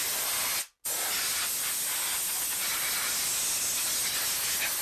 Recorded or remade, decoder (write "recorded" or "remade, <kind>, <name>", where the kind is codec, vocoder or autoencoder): recorded